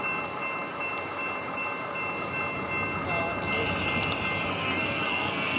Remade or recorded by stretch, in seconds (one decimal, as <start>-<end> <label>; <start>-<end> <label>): 0.0-4.5 recorded; 4.5-5.6 remade